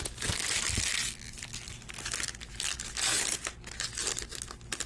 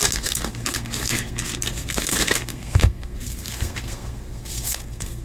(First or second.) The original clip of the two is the first